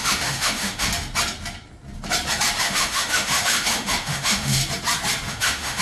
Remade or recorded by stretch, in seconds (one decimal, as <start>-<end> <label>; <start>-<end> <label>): 0.0-0.9 remade; 0.9-2.6 recorded; 2.6-4.6 remade; 4.6-5.3 recorded; 5.3-5.8 remade